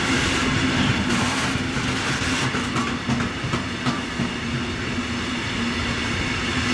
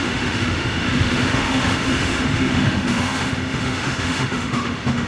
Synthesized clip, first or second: second